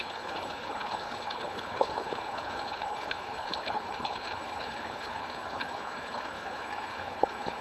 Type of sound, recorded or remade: remade